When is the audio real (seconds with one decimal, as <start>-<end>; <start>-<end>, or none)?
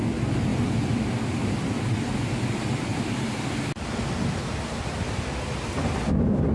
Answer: 0.0-6.5